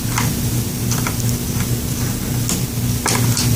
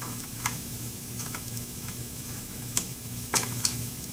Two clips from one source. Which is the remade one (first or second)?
second